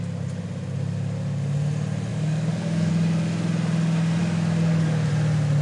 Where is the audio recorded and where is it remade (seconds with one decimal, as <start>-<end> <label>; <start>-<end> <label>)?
0.0-2.1 recorded; 2.1-2.9 remade; 2.9-4.2 recorded; 4.2-5.1 remade; 5.1-5.6 recorded